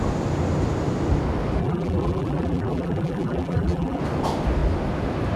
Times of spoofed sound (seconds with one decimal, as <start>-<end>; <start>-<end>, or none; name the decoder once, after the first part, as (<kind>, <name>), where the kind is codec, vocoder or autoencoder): 1.6-4.0 (vocoder, BigVGAN v2)